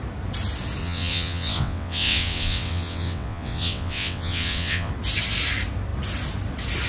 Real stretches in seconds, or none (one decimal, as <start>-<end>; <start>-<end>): 0.0-0.8; 4.9-6.9